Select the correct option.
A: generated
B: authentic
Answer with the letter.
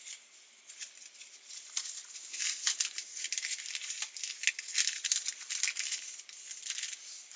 B